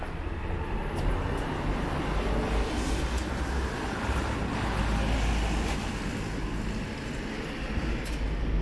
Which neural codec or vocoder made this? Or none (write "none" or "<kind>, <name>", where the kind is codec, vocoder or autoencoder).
none